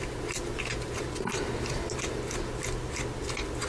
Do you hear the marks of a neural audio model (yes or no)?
no